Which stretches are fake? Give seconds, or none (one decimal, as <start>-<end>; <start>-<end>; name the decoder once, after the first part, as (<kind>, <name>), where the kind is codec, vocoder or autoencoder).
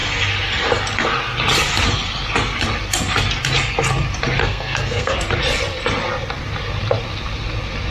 4.4-5.1 (codec, SNAC)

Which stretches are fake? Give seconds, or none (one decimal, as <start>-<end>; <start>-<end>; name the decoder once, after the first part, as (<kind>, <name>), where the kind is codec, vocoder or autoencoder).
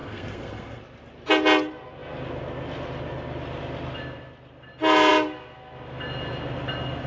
0.0-0.8 (codec, SNAC)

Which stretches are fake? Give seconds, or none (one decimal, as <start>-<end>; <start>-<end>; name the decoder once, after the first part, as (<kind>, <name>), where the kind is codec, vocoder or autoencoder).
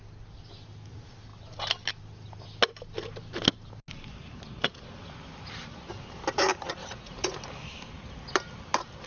6.8-7.4 (vocoder, Vocos)